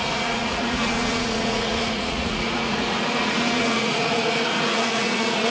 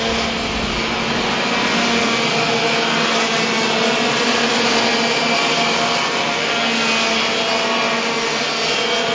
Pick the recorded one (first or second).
second